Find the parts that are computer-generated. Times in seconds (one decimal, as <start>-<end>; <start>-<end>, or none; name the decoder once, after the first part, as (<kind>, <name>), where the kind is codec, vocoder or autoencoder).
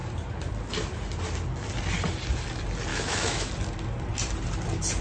2.9-3.5 (autoencoder, DAC-VAE)